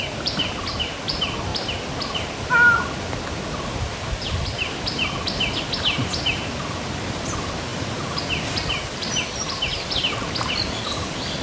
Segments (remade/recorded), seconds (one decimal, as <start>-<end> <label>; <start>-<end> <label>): 0.0-11.4 recorded